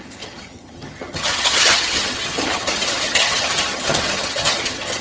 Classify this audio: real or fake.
fake